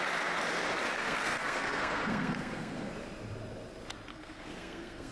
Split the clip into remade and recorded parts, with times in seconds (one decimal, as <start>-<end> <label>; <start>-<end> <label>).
0.0-1.0 recorded; 1.0-2.9 remade; 2.9-4.1 recorded; 4.1-5.1 remade